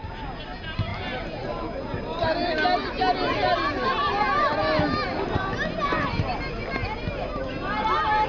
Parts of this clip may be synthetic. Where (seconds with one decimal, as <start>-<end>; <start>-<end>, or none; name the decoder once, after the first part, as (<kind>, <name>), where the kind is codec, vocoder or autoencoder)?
none